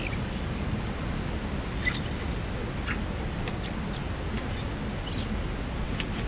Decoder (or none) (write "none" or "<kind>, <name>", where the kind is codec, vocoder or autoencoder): none